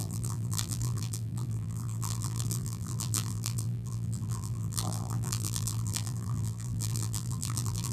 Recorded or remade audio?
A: remade